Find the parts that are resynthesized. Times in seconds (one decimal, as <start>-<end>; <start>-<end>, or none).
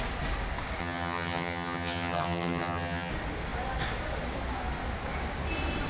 0.8-3.1